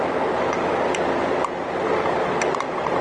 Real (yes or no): yes